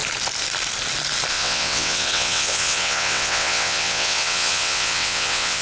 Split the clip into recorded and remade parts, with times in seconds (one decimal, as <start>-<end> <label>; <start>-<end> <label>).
0.0-1.3 recorded; 1.3-5.6 remade